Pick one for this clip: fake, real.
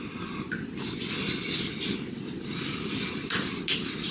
real